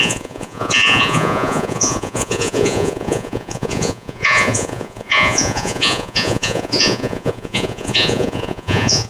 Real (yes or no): no